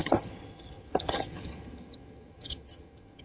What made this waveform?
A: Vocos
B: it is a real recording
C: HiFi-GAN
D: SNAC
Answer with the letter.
C